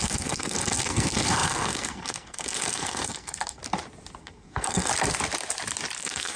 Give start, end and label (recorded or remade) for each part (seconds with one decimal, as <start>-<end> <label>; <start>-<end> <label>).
0.0-3.6 remade; 3.6-4.2 recorded; 4.2-4.9 remade; 4.9-6.0 recorded; 6.0-6.4 remade

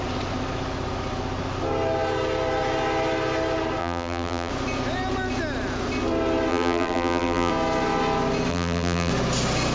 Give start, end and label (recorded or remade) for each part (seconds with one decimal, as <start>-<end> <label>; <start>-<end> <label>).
0.0-3.8 recorded; 3.8-4.5 remade; 4.5-6.5 recorded; 6.5-7.5 remade; 7.5-8.5 recorded; 8.5-9.1 remade; 9.1-9.7 recorded